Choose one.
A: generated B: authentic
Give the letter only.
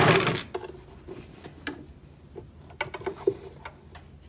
B